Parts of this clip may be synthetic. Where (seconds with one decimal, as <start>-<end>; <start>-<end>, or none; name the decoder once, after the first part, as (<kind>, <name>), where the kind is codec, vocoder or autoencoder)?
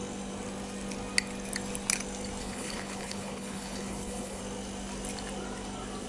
2.4-4.4 (codec, HILCodec)